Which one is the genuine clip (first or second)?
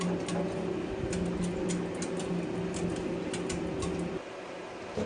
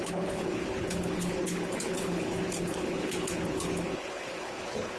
first